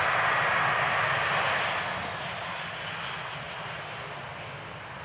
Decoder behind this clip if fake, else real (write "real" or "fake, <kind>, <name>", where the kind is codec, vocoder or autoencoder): real